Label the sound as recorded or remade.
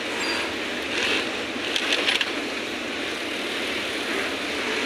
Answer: recorded